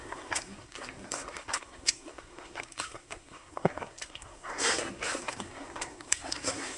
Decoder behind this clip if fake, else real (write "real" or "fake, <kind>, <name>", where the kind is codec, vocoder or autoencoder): fake, codec, SNAC